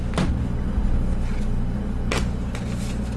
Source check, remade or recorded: recorded